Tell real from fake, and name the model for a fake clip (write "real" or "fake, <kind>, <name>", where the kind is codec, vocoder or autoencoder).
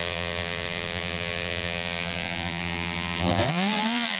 fake, vocoder, BigVGAN v2